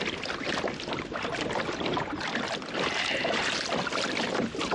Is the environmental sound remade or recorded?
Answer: recorded